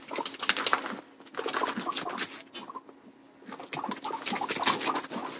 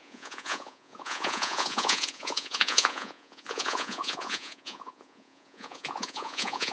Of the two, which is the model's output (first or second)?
second